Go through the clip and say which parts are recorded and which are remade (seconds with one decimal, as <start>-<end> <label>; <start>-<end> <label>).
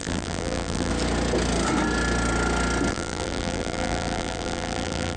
0.0-0.9 remade; 0.9-2.9 recorded; 2.9-5.2 remade